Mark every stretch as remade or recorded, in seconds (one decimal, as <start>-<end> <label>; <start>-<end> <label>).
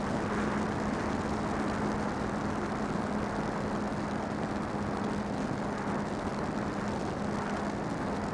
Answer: 0.0-8.3 recorded